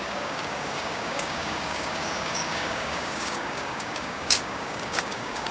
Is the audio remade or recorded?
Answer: remade